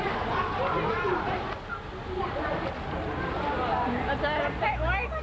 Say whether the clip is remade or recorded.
recorded